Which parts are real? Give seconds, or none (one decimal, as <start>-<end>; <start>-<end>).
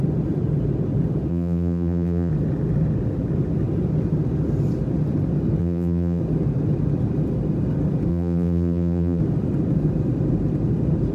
0.0-1.3; 2.3-5.6; 6.2-8.1; 9.2-11.1